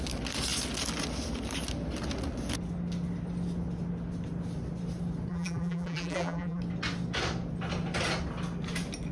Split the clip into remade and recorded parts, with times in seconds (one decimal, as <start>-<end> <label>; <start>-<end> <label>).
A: 0.0-5.3 recorded; 5.3-6.6 remade; 6.6-9.1 recorded